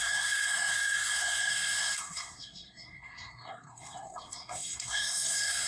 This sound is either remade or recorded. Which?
remade